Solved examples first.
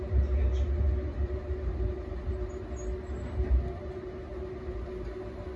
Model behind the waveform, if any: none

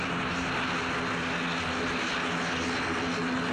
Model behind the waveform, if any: none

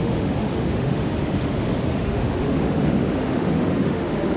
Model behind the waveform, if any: autoencoder, DAC-VAE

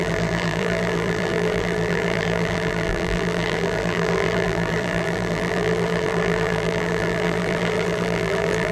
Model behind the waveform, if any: vocoder, BigVGAN v2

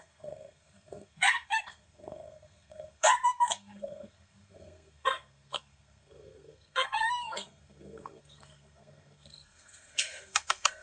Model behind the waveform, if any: codec, SNAC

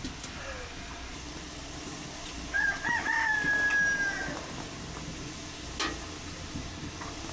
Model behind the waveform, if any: none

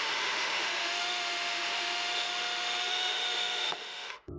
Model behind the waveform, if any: autoencoder, DAC-VAE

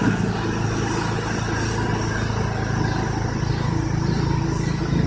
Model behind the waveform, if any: none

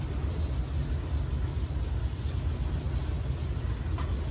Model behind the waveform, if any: none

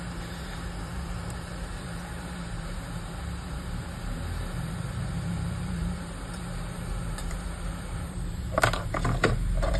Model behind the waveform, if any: vocoder, BigVGAN v2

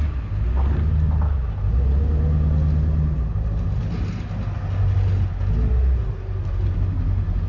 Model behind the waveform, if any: none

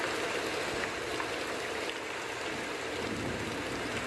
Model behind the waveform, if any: none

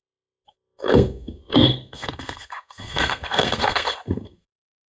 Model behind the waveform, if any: codec, SNAC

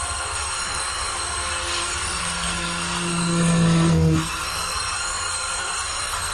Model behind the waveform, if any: codec, SNAC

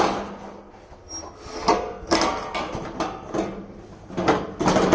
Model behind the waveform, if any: none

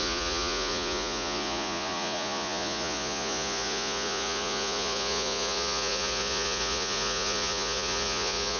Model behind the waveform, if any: vocoder, Vocos